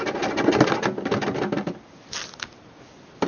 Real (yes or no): yes